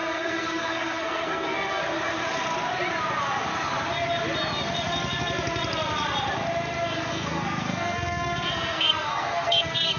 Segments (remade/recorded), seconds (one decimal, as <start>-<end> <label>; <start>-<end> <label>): 0.0-1.8 remade; 1.8-7.1 recorded; 7.1-10.0 remade